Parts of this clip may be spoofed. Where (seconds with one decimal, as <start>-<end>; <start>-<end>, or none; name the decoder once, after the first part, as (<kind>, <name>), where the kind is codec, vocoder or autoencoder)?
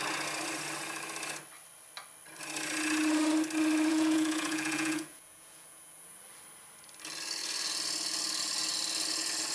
3.9-6.2 (vocoder, Vocos)